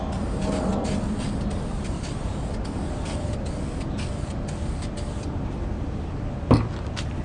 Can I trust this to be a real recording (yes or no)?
yes